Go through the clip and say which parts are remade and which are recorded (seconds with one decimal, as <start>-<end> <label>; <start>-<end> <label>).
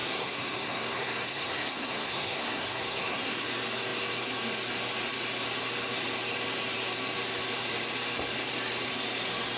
0.0-3.4 remade; 3.4-9.6 recorded